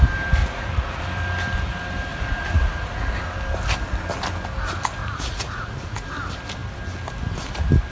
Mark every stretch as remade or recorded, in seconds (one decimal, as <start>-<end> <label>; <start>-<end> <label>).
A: 0.0-0.4 recorded; 0.4-1.0 remade; 1.0-2.1 recorded; 2.1-3.1 remade; 3.1-5.0 recorded; 5.0-6.1 remade; 6.1-7.9 recorded